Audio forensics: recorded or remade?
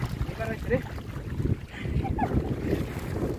recorded